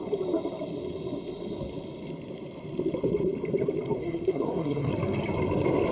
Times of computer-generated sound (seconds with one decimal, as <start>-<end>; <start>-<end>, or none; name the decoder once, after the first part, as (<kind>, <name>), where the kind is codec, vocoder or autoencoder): 4.0-4.9 (codec, SNAC)

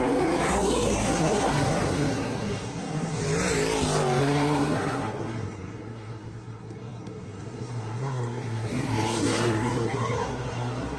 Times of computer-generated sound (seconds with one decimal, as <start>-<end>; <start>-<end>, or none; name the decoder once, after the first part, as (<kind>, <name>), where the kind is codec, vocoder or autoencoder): 0.0-3.2 (codec, SNAC); 4.2-11.0

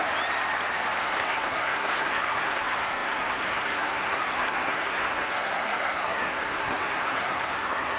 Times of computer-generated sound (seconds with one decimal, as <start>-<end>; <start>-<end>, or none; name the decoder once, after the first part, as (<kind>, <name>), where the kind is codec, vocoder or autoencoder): 1.0-8.0 (codec, SNAC)

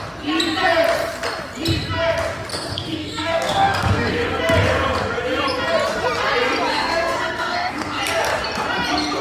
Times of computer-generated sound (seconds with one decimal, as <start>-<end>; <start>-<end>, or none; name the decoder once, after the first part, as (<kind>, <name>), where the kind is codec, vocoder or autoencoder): 2.5-4.4 (codec, SNAC); 6.7-8.0

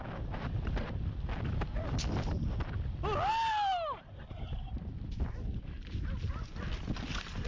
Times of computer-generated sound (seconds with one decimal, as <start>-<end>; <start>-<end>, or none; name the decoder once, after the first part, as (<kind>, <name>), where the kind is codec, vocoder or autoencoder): none